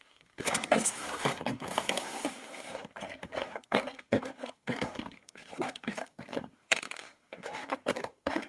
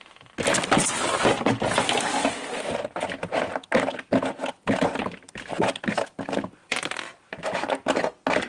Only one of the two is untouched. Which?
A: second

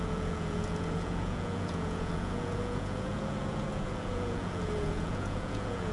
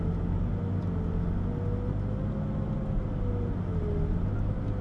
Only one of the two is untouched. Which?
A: second